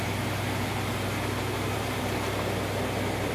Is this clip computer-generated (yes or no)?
yes